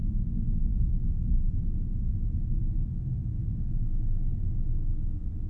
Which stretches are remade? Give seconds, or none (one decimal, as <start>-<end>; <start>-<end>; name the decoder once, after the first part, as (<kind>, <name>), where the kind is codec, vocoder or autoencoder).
none